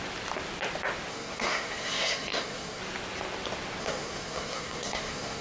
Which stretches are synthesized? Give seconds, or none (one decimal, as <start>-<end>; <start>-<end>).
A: 1.1-2.8; 3.8-5.4